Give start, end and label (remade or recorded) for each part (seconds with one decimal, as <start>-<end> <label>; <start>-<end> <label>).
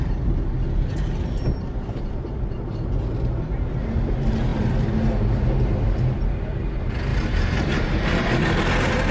0.0-7.1 recorded; 7.1-8.4 remade; 8.4-9.1 recorded